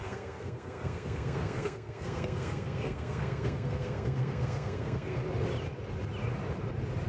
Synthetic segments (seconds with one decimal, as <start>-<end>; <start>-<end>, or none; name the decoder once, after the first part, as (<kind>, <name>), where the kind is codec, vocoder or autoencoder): 0.0-5.2 (codec, SNAC)